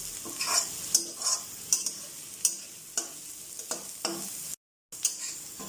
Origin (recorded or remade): recorded